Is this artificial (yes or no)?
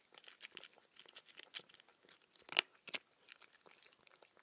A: no